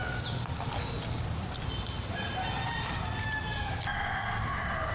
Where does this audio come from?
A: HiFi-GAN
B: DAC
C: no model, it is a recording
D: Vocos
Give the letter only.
C